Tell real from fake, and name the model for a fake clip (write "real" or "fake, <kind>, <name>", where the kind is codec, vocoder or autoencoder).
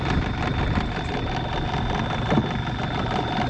real